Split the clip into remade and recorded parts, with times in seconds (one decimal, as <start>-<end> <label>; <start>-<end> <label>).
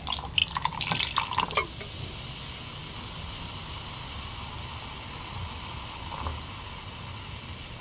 0.0-7.8 recorded